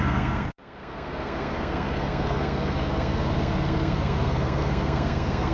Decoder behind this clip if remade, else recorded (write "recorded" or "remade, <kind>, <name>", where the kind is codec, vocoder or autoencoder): remade, codec, SNAC